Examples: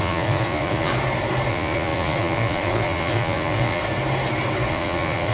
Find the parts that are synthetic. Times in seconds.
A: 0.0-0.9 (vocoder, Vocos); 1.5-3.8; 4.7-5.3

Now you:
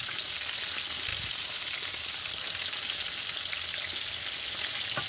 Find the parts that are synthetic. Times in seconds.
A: none

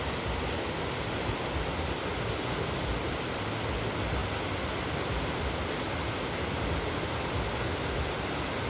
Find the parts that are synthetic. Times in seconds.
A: none

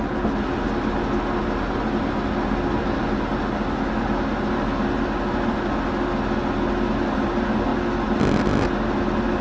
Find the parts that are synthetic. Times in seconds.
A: none

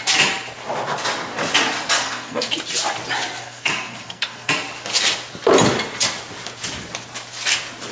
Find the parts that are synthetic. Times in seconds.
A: 2.0-2.5 (codec, SNAC); 3.4-4.5